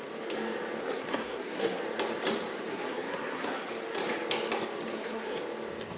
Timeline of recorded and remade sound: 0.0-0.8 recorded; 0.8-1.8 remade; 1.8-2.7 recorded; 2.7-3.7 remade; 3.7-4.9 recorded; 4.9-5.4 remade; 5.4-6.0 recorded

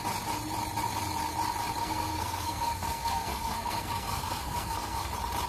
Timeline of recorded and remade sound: 0.0-1.8 recorded; 1.8-5.1 remade; 5.1-5.5 recorded

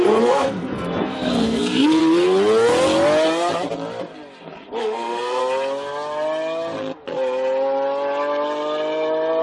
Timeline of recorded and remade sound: 0.0-2.0 remade; 2.0-4.8 recorded; 4.8-5.4 remade; 5.4-9.4 recorded